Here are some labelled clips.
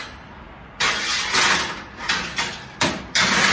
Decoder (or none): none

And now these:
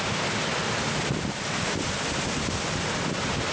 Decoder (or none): none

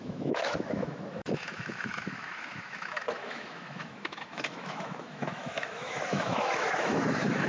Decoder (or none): autoencoder, DAC-VAE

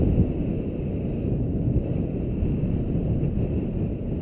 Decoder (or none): none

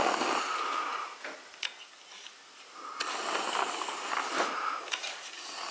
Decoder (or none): none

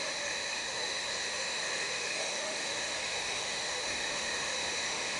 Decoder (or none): autoencoder, DAC-VAE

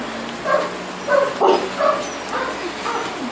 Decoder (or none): none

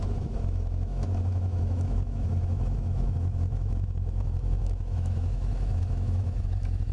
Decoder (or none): autoencoder, DAC-VAE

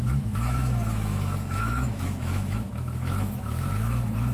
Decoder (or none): autoencoder, DAC-VAE